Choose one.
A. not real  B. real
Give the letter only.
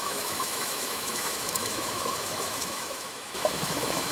A